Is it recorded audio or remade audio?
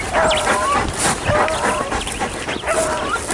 recorded